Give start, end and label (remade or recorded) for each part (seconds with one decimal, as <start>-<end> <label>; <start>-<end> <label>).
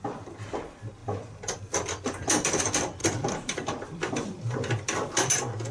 0.0-1.0 recorded; 1.0-2.6 remade; 2.6-3.0 recorded; 3.0-5.3 remade; 5.3-5.7 recorded